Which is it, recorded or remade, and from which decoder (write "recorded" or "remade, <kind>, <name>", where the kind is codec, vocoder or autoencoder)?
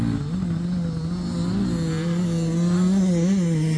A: recorded